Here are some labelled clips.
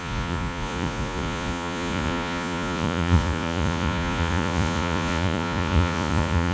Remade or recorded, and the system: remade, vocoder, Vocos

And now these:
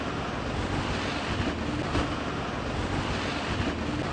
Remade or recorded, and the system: recorded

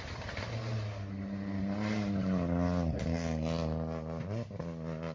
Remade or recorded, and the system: recorded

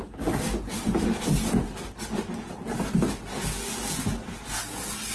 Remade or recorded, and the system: recorded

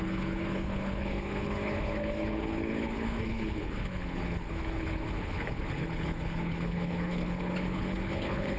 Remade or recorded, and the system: remade, codec, HILCodec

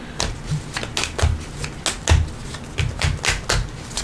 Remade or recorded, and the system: recorded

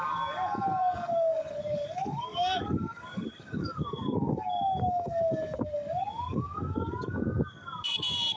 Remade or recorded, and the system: remade, codec, DAC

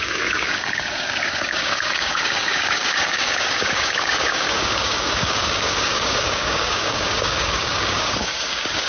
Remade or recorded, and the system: remade, codec, DAC